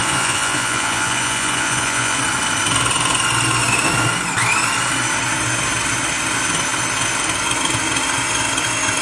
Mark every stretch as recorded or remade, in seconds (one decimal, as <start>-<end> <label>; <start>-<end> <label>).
0.0-2.2 remade; 2.2-9.0 recorded